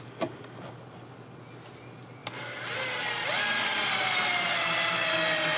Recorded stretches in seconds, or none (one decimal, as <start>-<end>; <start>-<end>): 0.0-5.6